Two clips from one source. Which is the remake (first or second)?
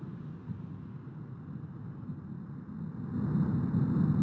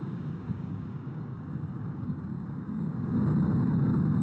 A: second